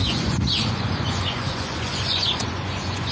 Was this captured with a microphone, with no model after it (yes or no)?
no